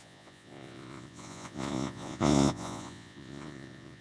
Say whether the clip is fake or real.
fake